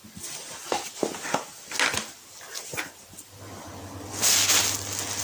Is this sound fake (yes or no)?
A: no